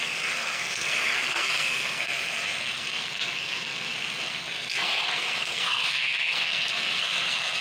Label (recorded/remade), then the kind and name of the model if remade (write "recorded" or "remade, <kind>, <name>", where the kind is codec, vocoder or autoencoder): remade, codec, SNAC